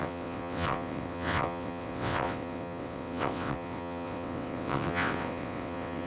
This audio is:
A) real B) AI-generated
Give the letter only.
B